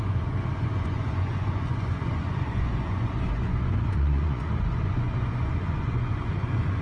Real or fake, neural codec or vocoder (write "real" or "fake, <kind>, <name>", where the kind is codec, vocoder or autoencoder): fake, vocoder, Vocos